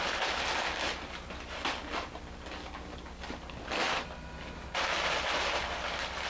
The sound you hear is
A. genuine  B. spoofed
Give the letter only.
A